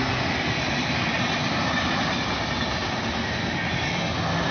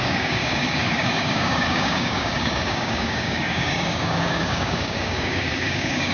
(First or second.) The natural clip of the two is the first